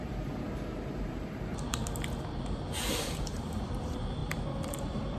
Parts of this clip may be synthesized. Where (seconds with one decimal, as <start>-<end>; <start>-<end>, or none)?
0.0-1.8; 2.4-5.2